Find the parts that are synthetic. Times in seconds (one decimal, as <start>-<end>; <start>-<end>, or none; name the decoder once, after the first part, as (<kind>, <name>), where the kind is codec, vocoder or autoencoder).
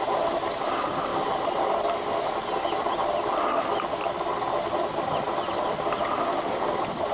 none